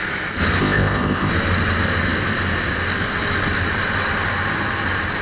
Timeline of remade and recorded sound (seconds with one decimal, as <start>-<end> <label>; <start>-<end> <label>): 0.0-0.6 recorded; 0.6-1.3 remade; 1.3-5.2 recorded